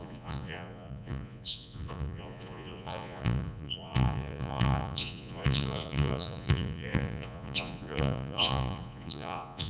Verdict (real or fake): fake